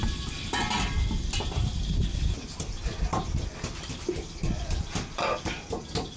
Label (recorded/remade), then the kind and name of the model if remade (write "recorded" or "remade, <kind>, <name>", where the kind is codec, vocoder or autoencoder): remade, vocoder, BigVGAN v2